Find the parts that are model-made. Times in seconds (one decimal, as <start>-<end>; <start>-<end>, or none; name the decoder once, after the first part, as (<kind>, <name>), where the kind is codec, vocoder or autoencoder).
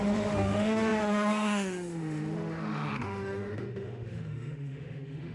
0.0-5.3 (autoencoder, DAC-VAE)